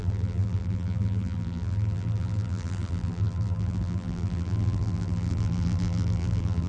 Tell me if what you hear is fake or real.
fake